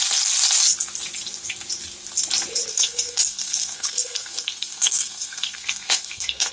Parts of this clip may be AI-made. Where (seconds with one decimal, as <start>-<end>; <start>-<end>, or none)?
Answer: 2.7-6.5